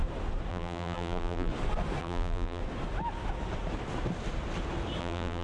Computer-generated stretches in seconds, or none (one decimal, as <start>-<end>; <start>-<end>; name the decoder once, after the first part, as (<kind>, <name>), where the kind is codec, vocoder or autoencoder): 0.5-1.5 (vocoder, BigVGAN v2); 2.0-2.6; 5.0-5.4